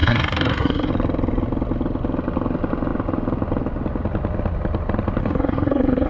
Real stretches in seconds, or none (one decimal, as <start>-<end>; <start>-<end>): 0.9-5.2